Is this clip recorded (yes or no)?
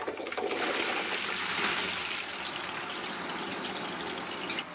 yes